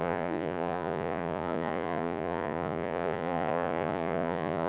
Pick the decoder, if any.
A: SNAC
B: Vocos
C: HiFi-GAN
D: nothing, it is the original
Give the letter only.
B